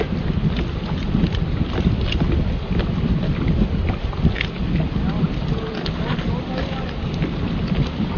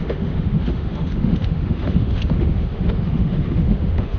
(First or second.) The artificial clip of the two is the second